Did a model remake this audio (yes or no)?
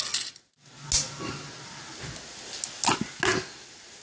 no